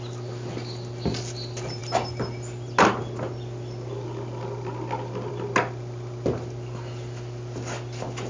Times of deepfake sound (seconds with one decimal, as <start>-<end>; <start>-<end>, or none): none